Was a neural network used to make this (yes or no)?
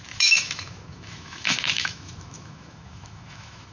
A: yes